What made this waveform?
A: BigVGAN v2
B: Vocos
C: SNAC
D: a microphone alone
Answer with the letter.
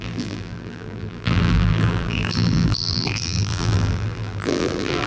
A